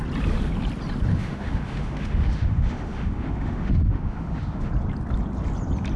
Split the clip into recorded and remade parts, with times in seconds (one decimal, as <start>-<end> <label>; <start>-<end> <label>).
0.0-1.1 recorded; 1.1-4.7 remade; 4.7-6.0 recorded